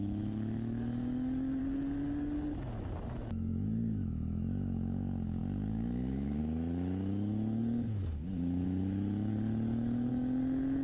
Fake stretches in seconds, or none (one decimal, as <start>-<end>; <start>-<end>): 0.0-1.6; 3.1-10.8